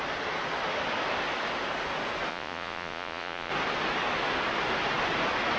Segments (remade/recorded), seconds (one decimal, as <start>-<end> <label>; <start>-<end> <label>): 0.0-2.3 recorded; 2.3-3.5 remade; 3.5-5.6 recorded